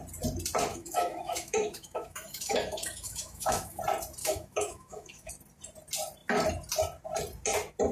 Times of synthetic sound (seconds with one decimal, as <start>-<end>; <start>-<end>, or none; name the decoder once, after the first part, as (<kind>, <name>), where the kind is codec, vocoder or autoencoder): 0.7-3.8 (autoencoder, DAC-VAE); 4.2-5.3